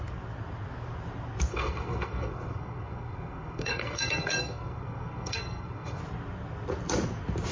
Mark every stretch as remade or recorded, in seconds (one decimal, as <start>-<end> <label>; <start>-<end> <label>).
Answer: 0.0-1.5 recorded; 1.5-6.0 remade; 6.0-7.5 recorded

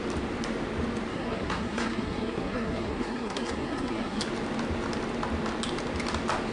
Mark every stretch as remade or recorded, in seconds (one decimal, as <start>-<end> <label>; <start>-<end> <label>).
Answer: 0.0-1.1 recorded; 1.1-4.2 remade; 4.2-6.5 recorded

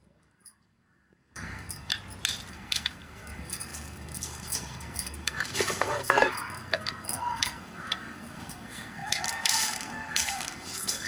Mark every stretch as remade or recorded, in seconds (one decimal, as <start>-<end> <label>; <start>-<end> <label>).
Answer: 0.0-1.9 remade; 1.9-2.5 recorded; 2.5-11.1 remade

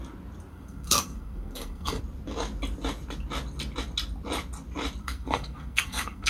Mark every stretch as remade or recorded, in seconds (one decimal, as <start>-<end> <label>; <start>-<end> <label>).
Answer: 0.0-0.5 recorded; 0.5-2.0 remade; 2.0-5.0 recorded; 5.0-6.3 remade

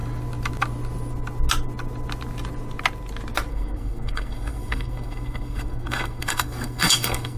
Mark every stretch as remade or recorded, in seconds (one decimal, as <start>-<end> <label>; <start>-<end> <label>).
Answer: 0.0-3.5 recorded; 3.5-7.4 remade